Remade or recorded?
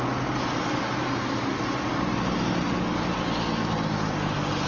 recorded